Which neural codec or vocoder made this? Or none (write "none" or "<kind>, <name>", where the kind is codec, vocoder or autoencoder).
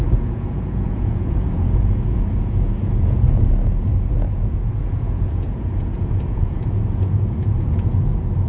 vocoder, Vocos